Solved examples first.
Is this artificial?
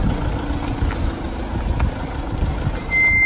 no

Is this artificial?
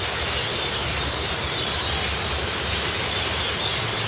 no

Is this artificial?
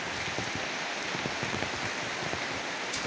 no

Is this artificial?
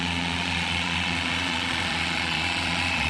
yes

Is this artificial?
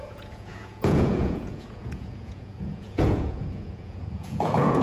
yes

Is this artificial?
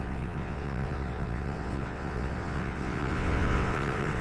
yes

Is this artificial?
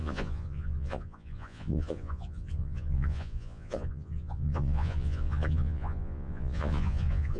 yes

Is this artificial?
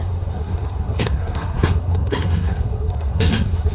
yes